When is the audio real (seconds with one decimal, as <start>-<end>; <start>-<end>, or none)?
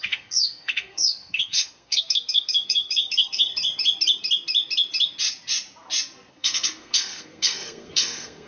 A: 3.5-6.3